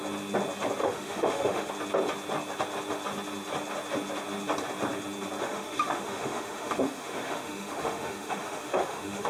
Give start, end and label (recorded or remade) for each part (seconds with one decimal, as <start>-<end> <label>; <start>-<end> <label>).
0.0-0.8 recorded; 0.8-1.7 remade; 1.7-5.4 recorded; 5.4-9.3 remade